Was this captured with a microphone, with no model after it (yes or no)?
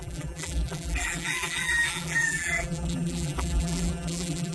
no